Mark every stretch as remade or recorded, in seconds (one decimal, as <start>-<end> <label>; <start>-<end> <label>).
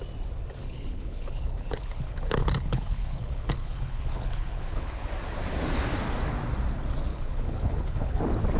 0.0-0.6 recorded; 0.6-5.1 remade; 5.1-7.1 recorded; 7.1-8.2 remade; 8.2-8.6 recorded